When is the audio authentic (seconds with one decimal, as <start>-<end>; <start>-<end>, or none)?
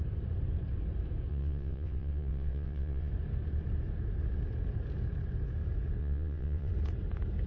0.0-1.3; 3.1-6.0; 6.7-7.5